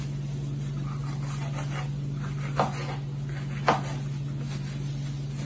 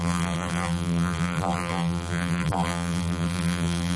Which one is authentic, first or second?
first